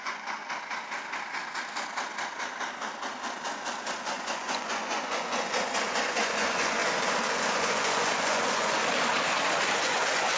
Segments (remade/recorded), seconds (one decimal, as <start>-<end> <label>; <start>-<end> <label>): 0.0-0.4 remade; 0.4-4.0 recorded; 4.0-6.8 remade; 6.8-7.3 recorded; 7.3-8.8 remade; 8.8-9.8 recorded; 9.8-10.4 remade